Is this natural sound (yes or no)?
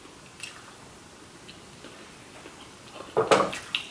yes